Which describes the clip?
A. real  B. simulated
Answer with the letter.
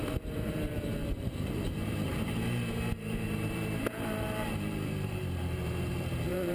B